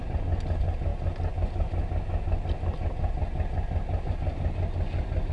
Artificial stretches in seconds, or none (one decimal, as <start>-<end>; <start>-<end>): none